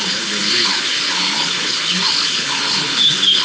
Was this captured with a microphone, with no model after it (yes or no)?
no